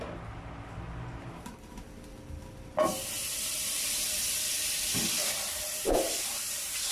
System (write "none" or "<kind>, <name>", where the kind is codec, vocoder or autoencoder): vocoder, BigVGAN v2